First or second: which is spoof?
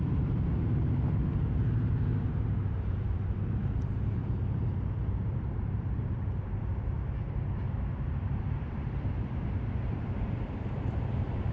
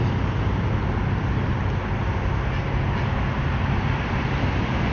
first